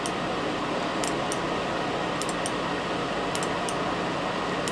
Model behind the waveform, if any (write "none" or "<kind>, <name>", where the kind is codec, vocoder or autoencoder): none